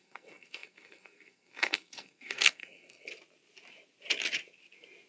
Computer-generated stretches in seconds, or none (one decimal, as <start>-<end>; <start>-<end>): 0.0-3.1